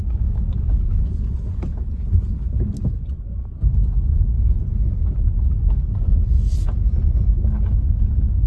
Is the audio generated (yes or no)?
no